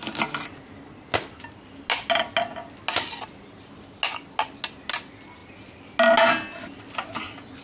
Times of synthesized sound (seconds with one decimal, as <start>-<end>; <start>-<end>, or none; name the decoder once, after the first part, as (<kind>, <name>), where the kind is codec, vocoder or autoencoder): none